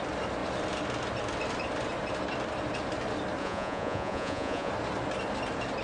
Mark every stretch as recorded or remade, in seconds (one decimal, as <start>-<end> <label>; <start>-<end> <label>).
0.0-3.4 recorded; 3.4-4.7 remade; 4.7-5.8 recorded